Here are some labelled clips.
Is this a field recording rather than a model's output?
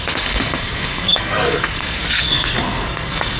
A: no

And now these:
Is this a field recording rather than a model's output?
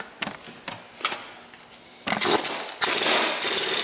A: yes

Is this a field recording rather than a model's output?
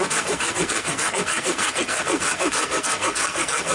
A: no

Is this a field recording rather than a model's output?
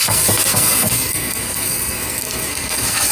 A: no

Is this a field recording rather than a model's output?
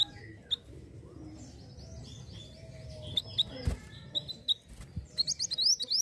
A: yes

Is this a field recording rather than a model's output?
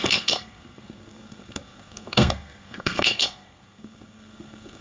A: no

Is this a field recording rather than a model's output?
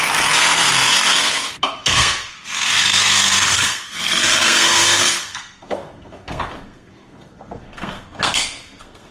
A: no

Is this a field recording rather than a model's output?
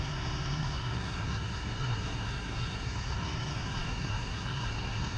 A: no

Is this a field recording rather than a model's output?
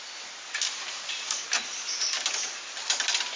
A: yes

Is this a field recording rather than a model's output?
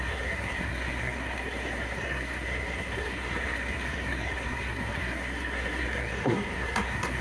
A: no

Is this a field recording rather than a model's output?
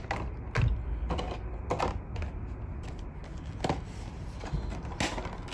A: yes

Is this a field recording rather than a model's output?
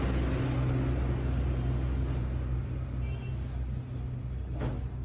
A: yes